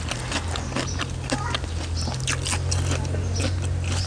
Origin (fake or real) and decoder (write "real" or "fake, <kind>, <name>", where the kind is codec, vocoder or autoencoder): real